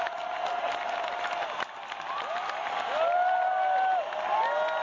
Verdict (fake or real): real